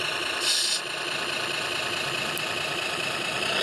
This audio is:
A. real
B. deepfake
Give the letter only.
A